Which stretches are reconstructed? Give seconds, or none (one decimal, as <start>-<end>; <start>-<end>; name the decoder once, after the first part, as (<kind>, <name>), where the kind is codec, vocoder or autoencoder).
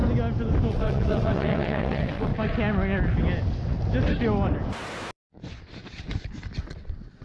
0.7-2.3 (vocoder, WaveNeXt); 6.6-7.2